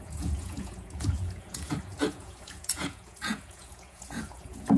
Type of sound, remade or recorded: remade